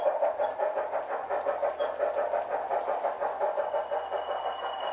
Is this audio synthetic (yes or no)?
no